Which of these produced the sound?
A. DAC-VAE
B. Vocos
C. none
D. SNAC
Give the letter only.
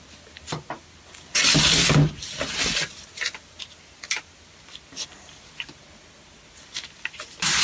C